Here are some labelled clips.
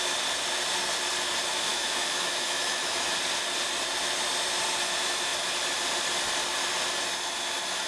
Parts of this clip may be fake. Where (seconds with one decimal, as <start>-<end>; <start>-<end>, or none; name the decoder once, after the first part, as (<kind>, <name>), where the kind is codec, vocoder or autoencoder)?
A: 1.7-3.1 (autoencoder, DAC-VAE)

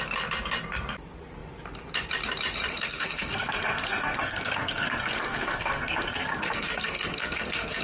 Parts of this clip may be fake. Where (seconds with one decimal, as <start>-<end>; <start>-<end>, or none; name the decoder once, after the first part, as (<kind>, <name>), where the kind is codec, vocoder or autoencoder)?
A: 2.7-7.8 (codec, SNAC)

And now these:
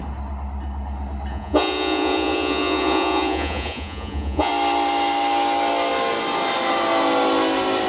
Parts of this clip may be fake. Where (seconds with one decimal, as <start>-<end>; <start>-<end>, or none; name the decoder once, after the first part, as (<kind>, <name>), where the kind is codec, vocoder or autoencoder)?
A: 1.3-4.5 (vocoder, Vocos)

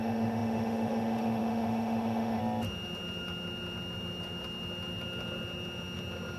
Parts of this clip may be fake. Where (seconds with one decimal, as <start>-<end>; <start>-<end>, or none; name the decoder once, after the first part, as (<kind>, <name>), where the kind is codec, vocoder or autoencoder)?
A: 0.0-2.4 (autoencoder, DAC-VAE)

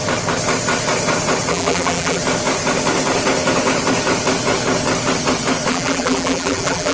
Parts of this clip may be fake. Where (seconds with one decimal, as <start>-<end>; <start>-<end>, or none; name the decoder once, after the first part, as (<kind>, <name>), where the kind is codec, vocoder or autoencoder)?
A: 1.5-2.2 (vocoder, BigVGAN v2); 5.7-6.9

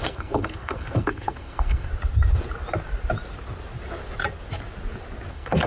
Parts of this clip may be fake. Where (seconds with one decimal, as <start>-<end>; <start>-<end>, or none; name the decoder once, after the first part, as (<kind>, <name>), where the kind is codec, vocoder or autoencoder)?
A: 0.0-1.9 (codec, SNAC); 5.3-5.7

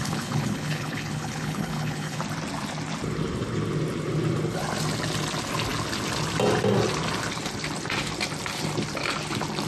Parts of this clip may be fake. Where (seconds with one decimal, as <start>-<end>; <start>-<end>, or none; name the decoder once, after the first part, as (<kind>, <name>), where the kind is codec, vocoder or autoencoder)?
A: 0.0-2.2 (codec, HILCodec)